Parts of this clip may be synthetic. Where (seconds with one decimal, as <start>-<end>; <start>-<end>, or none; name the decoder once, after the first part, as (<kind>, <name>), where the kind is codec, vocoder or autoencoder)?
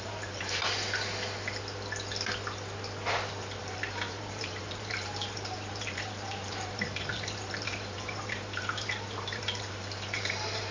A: 0.0-0.6 (vocoder, BigVGAN v2); 3.6-10.7